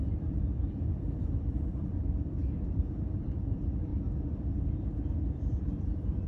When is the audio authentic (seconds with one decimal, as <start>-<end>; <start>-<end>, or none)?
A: 3.9-5.1